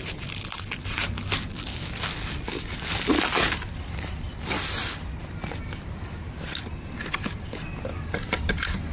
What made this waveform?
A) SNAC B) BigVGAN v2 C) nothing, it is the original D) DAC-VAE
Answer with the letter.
C